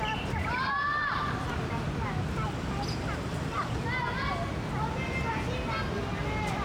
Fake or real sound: real